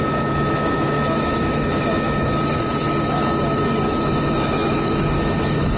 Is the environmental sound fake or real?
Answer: fake